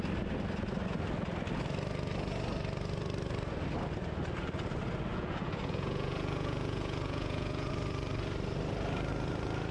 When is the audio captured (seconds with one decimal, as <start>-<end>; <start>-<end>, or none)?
0.0-5.1; 7.7-9.7